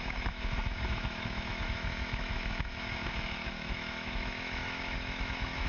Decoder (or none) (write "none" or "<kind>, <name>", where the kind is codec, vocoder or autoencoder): autoencoder, DAC-VAE